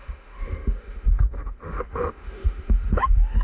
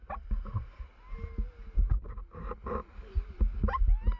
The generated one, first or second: first